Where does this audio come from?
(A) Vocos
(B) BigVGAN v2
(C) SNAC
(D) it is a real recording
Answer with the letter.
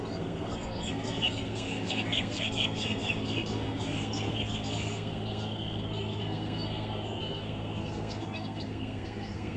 C